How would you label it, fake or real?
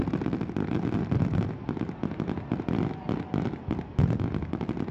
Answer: real